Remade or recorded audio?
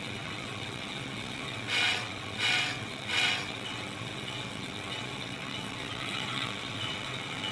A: remade